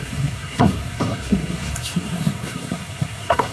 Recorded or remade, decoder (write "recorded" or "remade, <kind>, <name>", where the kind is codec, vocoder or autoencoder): remade, codec, SNAC